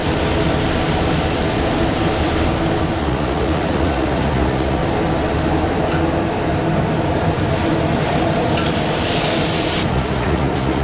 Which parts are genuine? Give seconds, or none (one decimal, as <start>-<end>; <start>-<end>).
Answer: 0.0-3.0; 4.8-9.9